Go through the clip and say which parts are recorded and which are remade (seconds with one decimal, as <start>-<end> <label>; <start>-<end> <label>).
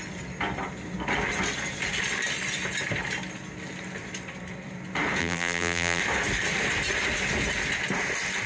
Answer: 0.0-5.2 recorded; 5.2-6.0 remade; 6.0-8.5 recorded